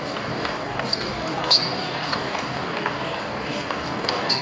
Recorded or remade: remade